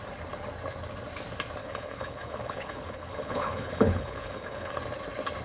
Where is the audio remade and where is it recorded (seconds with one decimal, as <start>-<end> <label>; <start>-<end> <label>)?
0.0-1.6 recorded; 1.6-4.8 remade; 4.8-5.4 recorded

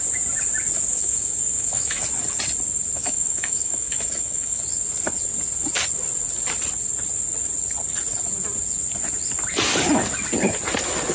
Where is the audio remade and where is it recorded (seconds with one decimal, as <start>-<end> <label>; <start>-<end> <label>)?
0.0-0.9 recorded; 0.9-2.0 remade; 2.0-3.0 recorded; 3.0-4.6 remade; 4.6-11.1 recorded

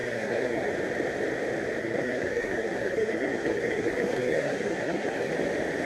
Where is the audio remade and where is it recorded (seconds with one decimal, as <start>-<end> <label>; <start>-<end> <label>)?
0.0-0.7 remade; 0.7-1.8 recorded; 1.8-5.3 remade; 5.3-5.9 recorded

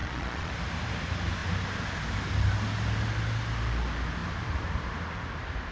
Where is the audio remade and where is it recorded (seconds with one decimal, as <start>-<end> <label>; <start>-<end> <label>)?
0.0-0.5 remade; 0.5-5.7 recorded

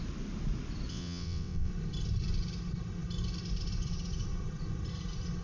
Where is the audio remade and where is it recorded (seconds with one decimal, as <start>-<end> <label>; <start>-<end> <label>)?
0.0-0.9 recorded; 0.9-1.7 remade; 1.7-5.4 recorded

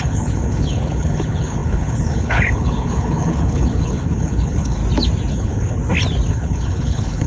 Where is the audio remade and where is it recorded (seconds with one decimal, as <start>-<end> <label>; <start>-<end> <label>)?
0.0-4.8 remade; 4.8-5.3 recorded; 5.3-5.8 remade; 5.8-6.3 recorded; 6.3-7.3 remade

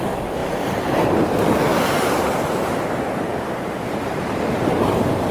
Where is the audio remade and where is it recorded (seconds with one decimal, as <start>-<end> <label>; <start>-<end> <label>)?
0.0-0.4 recorded; 0.4-1.1 remade; 1.1-1.7 recorded; 1.7-5.3 remade

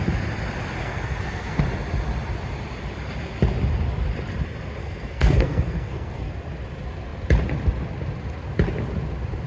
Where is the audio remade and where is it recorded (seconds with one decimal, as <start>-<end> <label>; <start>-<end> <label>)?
0.0-0.8 recorded; 0.8-1.6 remade; 1.6-4.8 recorded; 4.8-6.3 remade; 6.3-9.5 recorded